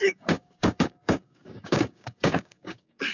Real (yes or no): no